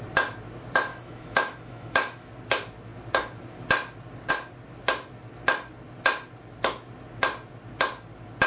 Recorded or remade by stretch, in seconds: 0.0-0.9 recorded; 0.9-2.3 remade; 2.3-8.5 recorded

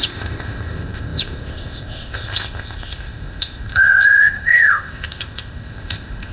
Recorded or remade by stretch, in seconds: 0.0-6.3 remade

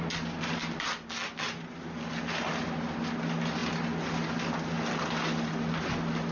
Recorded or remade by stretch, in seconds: 0.0-6.3 recorded

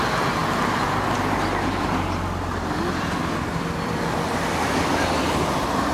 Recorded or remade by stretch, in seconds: 0.0-5.9 recorded